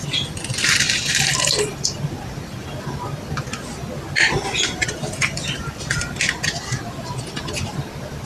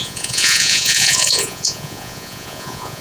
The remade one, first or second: second